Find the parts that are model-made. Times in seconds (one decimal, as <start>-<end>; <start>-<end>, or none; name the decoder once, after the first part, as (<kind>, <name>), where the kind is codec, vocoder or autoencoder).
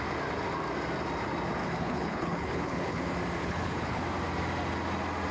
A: 1.6-3.0 (codec, HILCodec); 3.4-4.0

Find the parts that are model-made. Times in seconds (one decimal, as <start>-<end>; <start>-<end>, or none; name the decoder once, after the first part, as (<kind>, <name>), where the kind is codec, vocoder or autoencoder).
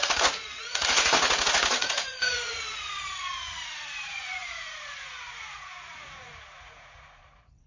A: 0.0-7.7 (vocoder, Vocos)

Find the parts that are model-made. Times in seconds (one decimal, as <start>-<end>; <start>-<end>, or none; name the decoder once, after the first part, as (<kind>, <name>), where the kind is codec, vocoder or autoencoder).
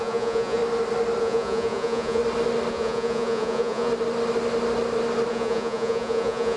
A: 0.0-0.6 (vocoder, Vocos); 1.2-2.2; 2.7-3.9; 5.3-6.6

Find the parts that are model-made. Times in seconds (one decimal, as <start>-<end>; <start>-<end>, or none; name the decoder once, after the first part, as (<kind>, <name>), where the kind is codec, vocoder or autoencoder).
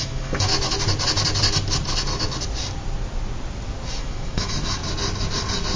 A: 0.0-0.5 (autoencoder, DAC-VAE); 4.0-4.8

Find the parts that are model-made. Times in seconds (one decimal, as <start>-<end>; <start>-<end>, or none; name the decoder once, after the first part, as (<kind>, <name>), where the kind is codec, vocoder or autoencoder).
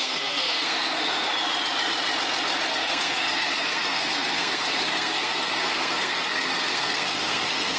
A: 0.0-1.3 (codec, SNAC); 2.7-7.8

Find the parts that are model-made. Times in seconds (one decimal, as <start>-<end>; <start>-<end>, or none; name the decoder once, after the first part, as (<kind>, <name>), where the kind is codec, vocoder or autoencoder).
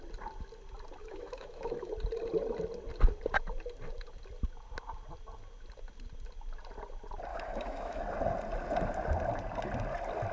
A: 1.0-1.9 (autoencoder, DAC-VAE); 7.3-8.0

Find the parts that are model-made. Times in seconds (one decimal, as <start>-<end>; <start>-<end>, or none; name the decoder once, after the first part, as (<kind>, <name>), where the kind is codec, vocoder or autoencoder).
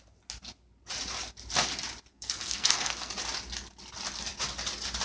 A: 2.1-3.1 (codec, SNAC)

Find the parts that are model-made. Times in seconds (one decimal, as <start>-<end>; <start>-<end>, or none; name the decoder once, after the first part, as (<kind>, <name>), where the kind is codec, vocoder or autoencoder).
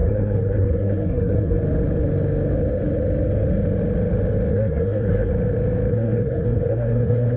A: 0.0-1.6 (codec, SNAC); 4.5-5.3; 5.9-7.4